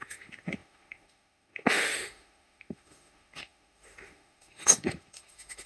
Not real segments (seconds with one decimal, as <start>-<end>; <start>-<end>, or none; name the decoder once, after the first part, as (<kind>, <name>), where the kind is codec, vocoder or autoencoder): 0.0-5.7 (autoencoder, DAC-VAE)